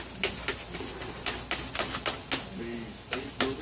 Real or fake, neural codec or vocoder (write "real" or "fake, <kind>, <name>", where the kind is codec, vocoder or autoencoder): real